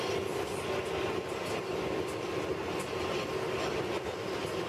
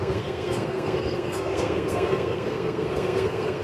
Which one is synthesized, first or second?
second